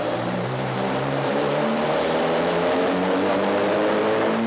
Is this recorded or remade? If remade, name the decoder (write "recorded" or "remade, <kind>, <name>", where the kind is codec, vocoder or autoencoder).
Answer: remade, vocoder, BigVGAN v2